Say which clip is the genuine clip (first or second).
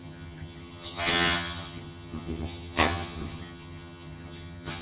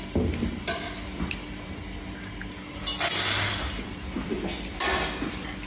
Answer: second